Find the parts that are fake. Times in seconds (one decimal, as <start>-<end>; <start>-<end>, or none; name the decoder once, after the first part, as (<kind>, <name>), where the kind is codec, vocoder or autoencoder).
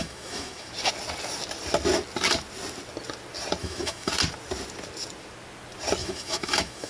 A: 0.0-0.7 (autoencoder, DAC-VAE); 3.6-4.1; 6.0-6.9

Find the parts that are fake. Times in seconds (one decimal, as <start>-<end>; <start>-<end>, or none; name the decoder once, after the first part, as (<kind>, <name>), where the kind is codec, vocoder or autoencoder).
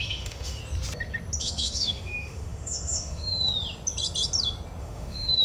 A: 0.0-0.6 (autoencoder, DAC-VAE); 1.4-3.5; 4.8-5.4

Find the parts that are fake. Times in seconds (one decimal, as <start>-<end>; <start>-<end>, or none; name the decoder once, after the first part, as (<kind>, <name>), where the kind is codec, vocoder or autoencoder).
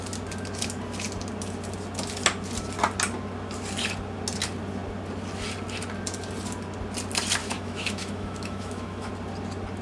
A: 7.4-9.1 (autoencoder, DAC-VAE)